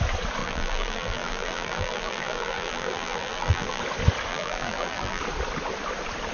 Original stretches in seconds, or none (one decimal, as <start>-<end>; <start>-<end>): 0.0-0.4; 3.8-4.3; 5.2-6.3